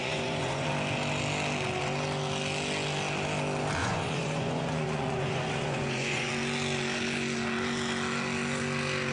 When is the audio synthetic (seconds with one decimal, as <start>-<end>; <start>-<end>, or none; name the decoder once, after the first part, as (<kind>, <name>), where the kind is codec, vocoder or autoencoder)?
0.0-0.7 (vocoder, Vocos); 3.8-6.3